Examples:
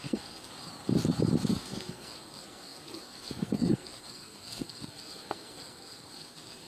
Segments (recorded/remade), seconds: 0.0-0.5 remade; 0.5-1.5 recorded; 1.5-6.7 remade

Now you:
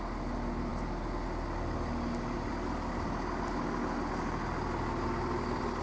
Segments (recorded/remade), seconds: 0.0-5.8 recorded

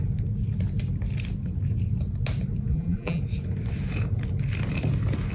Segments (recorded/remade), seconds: 0.0-2.7 recorded; 2.7-3.2 remade; 3.2-5.3 recorded

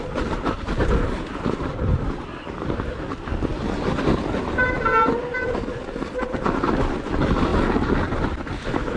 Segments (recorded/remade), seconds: 0.0-0.8 recorded; 0.8-1.7 remade; 1.7-3.5 recorded; 3.5-4.4 remade; 4.4-9.0 recorded

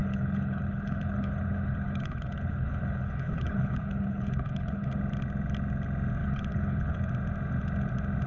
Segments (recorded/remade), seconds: 0.0-5.0 remade; 5.0-6.2 recorded; 6.2-7.1 remade; 7.1-8.3 recorded